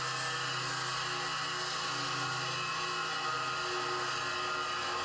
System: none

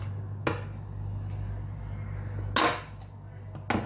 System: none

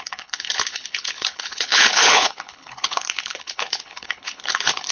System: codec, HILCodec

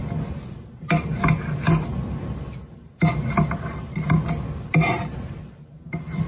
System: none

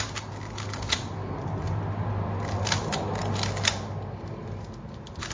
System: none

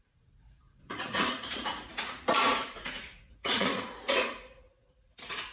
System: vocoder, Vocos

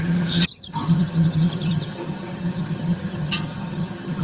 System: vocoder, HiFi-GAN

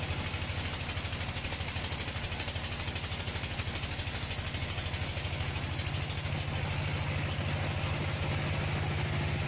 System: none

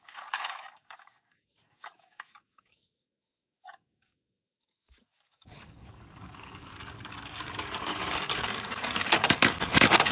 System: codec, DAC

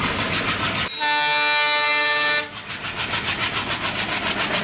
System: none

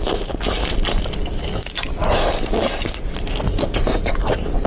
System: none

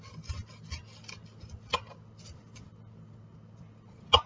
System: none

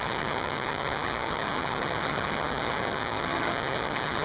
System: vocoder, HiFi-GAN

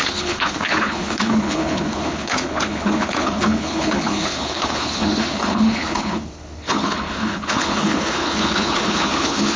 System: codec, HILCodec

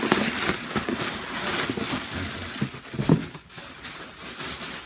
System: none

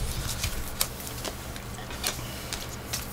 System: none